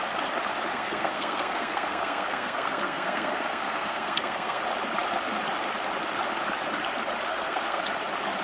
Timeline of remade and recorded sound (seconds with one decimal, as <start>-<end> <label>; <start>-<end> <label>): 0.0-0.7 recorded; 0.7-4.6 remade; 4.6-7.3 recorded; 7.3-7.8 remade; 7.8-8.4 recorded